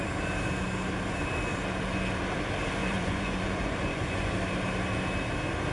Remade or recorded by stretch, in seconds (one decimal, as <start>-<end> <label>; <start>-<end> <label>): 0.0-2.8 recorded; 2.8-4.3 remade; 4.3-5.7 recorded